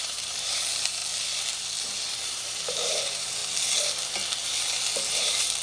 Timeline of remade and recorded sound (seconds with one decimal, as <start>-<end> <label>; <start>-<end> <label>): 0.0-1.0 remade; 1.0-1.8 recorded; 1.8-3.4 remade; 3.4-5.1 recorded; 5.1-5.6 remade